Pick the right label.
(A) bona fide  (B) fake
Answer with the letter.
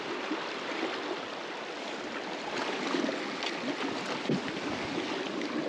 A